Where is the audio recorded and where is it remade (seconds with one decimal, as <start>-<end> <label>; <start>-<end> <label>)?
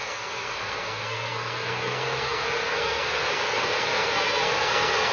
0.0-5.1 remade